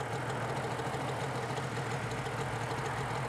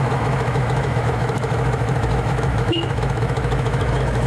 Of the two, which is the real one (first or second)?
first